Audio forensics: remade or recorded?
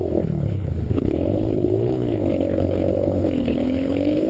remade